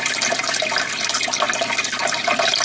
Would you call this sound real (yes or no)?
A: yes